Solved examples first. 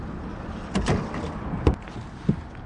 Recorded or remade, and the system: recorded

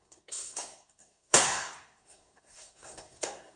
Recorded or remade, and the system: remade, codec, SNAC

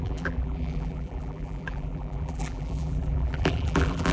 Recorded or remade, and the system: remade, vocoder, BigVGAN v2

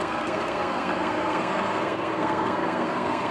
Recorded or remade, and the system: remade, codec, SNAC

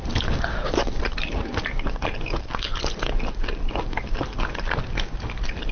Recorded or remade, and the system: recorded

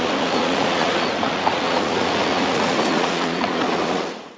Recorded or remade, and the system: remade, vocoder, Vocos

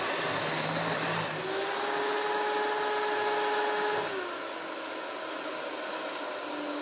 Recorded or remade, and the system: recorded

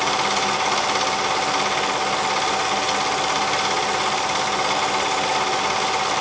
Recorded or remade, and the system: recorded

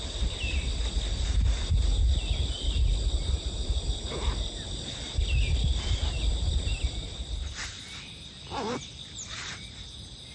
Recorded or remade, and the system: recorded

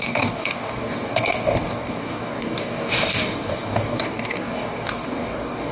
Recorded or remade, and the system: remade, codec, DAC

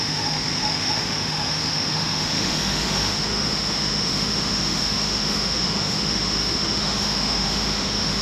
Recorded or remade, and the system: remade, autoencoder, DAC-VAE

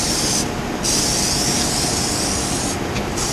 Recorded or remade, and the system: recorded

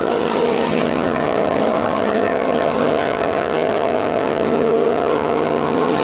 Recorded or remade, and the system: remade, vocoder, HiFi-GAN